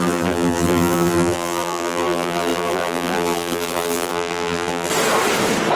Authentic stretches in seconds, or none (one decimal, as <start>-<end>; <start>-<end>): 4.9-5.8